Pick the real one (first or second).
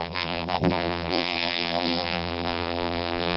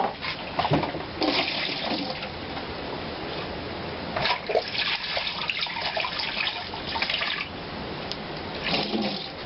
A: second